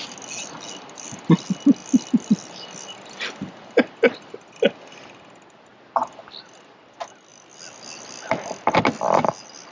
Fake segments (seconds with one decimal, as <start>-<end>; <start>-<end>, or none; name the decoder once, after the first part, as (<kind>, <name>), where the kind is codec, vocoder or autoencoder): none